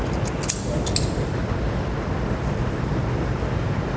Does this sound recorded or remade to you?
recorded